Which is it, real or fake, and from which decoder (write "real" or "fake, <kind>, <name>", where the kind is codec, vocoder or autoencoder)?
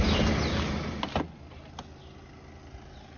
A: real